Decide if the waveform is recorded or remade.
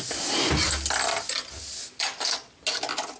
recorded